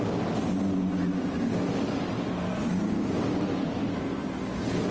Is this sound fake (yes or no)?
no